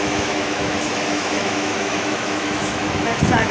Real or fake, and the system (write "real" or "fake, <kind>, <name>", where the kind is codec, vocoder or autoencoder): fake, autoencoder, DAC-VAE